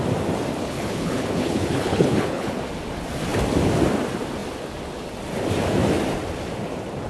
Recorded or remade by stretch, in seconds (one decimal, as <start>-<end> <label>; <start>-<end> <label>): 0.0-0.5 recorded; 0.5-2.6 remade; 2.6-7.1 recorded